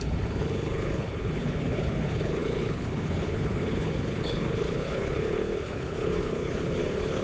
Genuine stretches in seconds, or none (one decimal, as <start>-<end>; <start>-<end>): none